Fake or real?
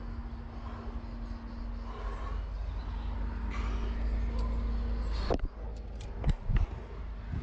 real